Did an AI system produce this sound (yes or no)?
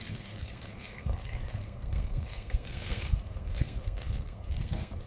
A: yes